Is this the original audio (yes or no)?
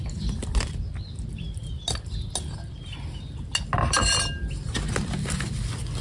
yes